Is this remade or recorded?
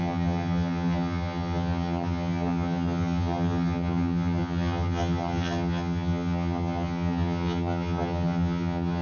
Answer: remade